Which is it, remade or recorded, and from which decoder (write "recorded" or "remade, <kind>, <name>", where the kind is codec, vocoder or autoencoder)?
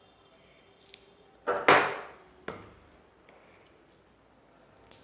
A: recorded